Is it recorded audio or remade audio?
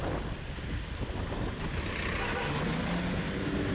recorded